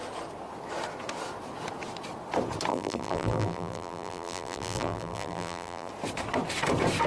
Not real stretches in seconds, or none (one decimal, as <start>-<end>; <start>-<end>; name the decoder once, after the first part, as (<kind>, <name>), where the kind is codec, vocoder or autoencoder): 2.7-5.9 (vocoder, BigVGAN v2)